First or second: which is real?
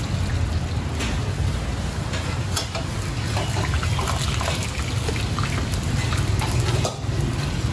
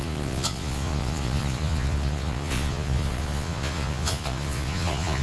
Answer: first